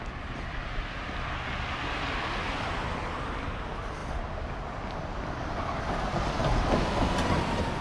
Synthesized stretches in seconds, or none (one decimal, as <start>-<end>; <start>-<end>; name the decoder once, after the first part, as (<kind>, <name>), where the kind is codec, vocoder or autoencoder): none